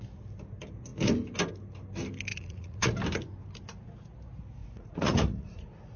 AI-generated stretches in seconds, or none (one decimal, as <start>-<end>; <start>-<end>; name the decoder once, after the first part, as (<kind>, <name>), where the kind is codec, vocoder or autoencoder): 2.3-2.9 (vocoder, Vocos); 4.6-6.0